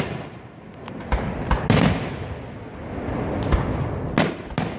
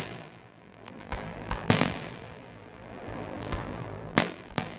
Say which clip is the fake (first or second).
second